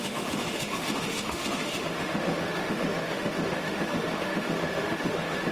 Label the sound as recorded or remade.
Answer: remade